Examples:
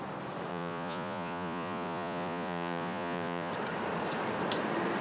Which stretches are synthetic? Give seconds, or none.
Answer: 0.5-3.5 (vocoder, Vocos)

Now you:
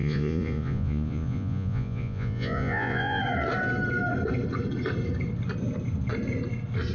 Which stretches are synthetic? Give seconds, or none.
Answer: 0.0-3.2 (vocoder, Vocos)

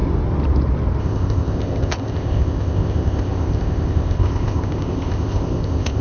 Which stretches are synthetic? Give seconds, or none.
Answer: 1.0-6.0 (codec, ZipCodec)

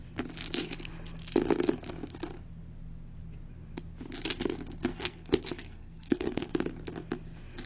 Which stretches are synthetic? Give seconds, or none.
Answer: 4.9-6.5 (codec, SNAC)

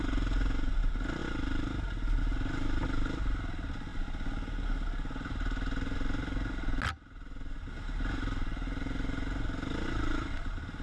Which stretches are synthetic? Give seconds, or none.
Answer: none

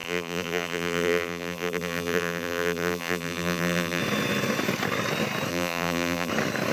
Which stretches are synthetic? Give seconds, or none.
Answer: 0.0-4.0 (vocoder, BigVGAN v2); 5.5-6.3

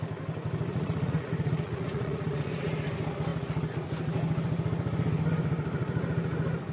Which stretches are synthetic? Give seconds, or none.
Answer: 0.7-2.7 (vocoder, Vocos)